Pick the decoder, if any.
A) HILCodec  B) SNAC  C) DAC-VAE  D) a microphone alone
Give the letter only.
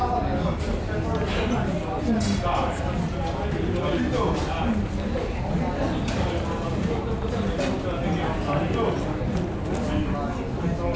D